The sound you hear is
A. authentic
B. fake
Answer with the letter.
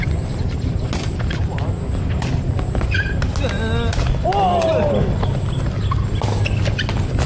A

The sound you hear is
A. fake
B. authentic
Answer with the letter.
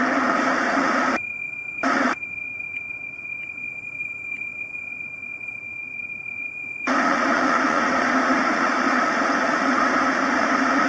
A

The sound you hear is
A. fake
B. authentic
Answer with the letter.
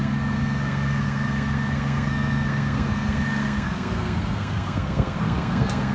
A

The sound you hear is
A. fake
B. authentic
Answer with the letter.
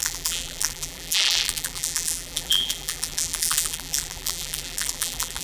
A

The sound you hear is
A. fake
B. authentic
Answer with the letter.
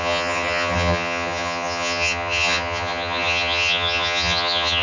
A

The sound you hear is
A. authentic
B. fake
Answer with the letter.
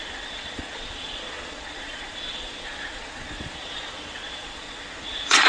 B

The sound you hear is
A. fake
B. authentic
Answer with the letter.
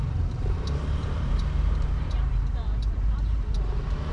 A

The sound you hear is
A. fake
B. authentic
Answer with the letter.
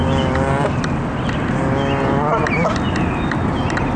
B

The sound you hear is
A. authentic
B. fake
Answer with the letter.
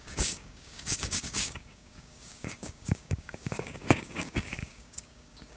B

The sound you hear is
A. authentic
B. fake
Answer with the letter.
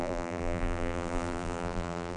B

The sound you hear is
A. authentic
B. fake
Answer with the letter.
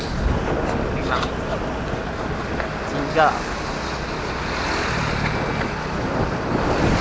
A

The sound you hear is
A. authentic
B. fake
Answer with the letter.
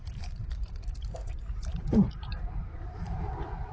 B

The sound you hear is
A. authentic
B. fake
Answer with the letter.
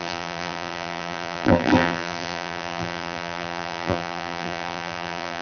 B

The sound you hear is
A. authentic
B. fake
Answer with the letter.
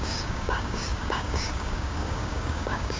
B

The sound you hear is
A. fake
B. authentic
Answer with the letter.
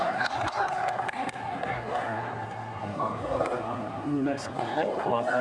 A